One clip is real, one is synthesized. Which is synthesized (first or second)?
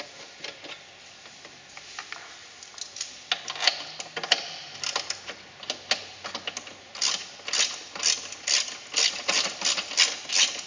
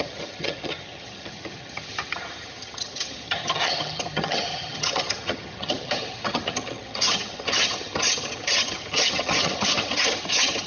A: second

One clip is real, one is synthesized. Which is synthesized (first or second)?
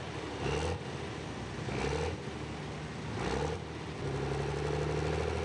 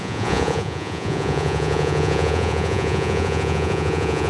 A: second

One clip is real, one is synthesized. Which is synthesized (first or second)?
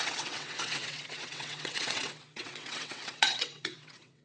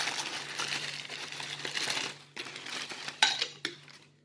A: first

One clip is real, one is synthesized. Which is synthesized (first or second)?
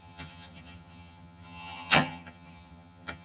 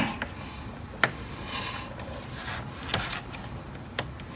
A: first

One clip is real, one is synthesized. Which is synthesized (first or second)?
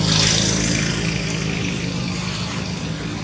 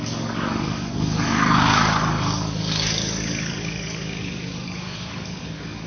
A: second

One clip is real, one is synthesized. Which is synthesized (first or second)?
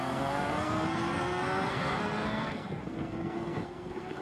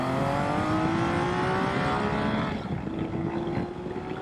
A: first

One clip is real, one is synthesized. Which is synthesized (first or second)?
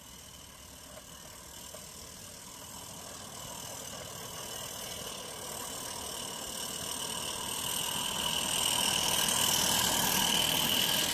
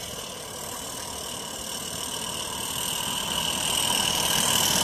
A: second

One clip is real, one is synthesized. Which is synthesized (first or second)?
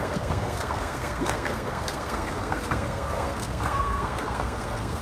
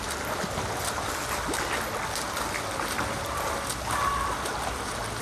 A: first